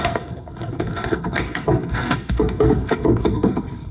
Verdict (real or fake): fake